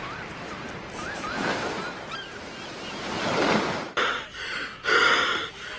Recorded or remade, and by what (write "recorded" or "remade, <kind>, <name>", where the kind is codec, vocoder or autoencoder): recorded